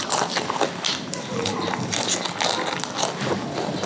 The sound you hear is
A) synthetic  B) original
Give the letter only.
B